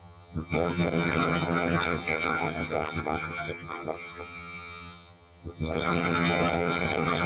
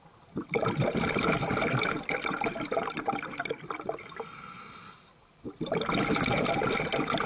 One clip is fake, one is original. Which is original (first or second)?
second